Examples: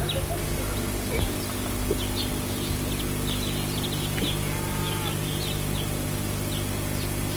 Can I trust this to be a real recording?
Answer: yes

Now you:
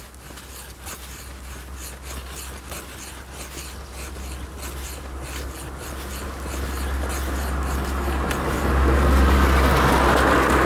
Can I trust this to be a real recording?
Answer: yes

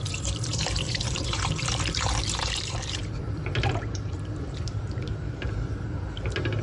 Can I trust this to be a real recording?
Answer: no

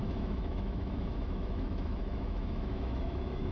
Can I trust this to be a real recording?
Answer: no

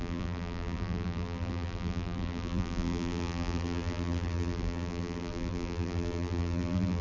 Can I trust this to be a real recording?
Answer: no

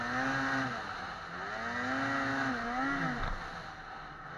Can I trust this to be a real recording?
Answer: yes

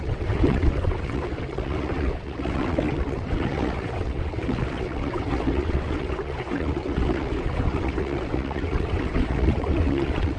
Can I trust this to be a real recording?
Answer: no